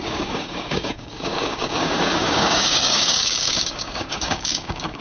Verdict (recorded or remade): remade